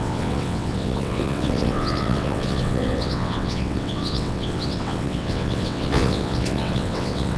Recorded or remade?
remade